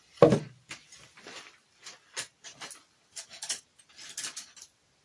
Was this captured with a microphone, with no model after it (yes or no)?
no